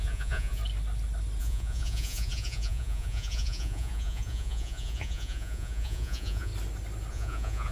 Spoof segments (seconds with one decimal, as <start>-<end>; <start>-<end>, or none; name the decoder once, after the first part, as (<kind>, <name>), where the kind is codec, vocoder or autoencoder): 0.0-0.6 (vocoder, Vocos); 1.4-6.5; 7.1-7.7